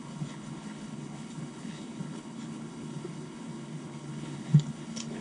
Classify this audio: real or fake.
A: fake